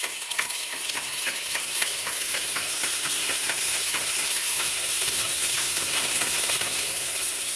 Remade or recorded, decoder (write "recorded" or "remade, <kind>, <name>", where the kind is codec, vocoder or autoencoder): remade, codec, SNAC